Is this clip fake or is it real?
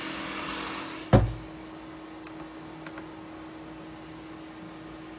real